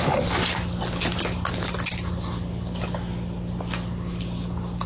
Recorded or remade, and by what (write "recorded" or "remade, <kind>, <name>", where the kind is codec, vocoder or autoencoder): recorded